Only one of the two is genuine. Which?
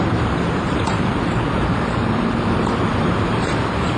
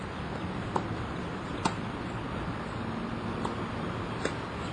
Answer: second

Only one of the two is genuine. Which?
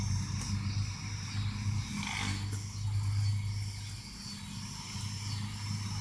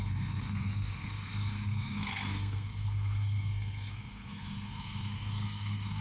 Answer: first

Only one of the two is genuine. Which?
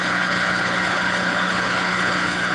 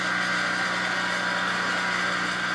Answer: second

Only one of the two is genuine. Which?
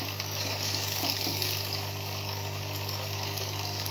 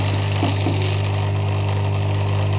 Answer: second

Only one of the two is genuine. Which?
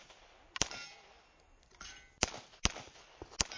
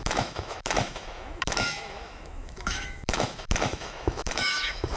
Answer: first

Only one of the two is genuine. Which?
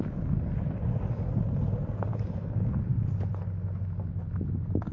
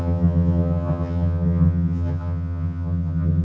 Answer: first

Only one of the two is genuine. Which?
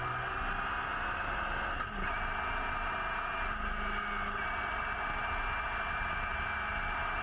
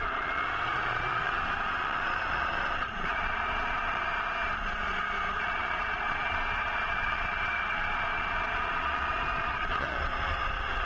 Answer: first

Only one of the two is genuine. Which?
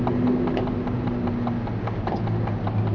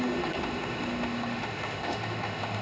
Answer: first